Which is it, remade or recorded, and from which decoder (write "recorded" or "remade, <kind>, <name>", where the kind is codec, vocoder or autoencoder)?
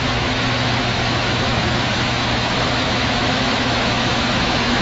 remade, autoencoder, DAC-VAE